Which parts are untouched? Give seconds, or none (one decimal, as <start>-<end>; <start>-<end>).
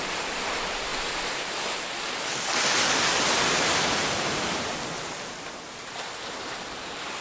0.0-7.2